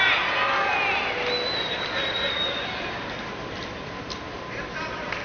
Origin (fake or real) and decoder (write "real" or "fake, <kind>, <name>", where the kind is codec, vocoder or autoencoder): real